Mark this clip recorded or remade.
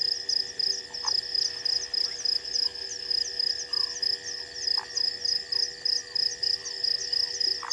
recorded